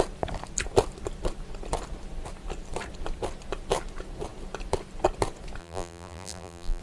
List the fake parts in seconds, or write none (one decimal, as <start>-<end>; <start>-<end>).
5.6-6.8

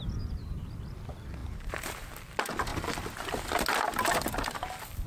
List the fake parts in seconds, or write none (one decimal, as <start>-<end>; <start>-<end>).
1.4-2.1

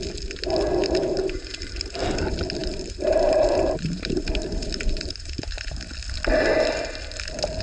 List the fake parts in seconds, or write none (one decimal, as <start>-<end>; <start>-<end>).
0.8-2.0; 2.6-5.9

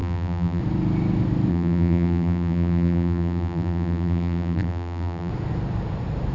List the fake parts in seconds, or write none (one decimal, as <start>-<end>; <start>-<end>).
0.0-0.6; 1.5-5.3

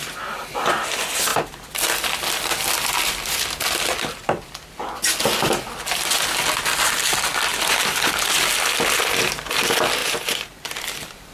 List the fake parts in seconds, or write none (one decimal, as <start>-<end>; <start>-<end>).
7.5-8.1; 10.0-11.3

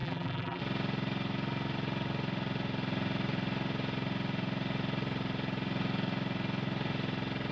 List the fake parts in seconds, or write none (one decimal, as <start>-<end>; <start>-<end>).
0.0-0.6